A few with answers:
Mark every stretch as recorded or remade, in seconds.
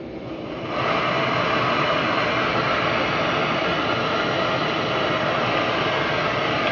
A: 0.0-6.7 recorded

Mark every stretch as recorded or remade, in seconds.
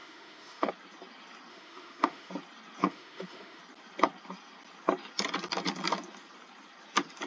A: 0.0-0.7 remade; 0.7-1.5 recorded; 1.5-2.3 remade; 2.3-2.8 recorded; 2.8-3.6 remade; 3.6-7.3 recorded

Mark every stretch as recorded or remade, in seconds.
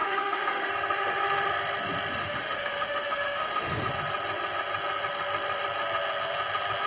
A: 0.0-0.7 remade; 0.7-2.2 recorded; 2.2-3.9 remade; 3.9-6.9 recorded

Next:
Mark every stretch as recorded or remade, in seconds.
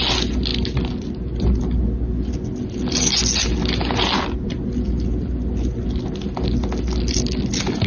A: 0.0-7.9 recorded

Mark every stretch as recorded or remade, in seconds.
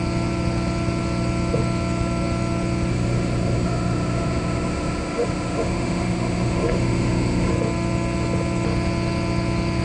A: 0.0-2.9 recorded; 2.9-7.5 remade; 7.5-9.8 recorded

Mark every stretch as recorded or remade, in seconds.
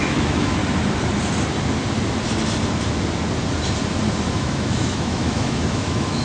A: 0.0-0.6 remade; 0.6-4.3 recorded; 4.3-6.2 remade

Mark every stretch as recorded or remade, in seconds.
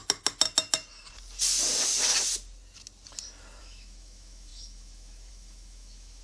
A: 0.0-3.6 recorded; 3.6-6.2 remade